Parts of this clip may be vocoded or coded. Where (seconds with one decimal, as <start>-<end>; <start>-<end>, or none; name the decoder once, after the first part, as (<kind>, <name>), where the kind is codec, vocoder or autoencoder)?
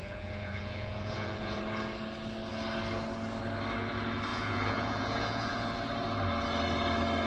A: 0.0-1.6 (vocoder, Vocos); 4.3-5.8